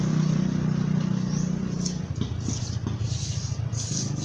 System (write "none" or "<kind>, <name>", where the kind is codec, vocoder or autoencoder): none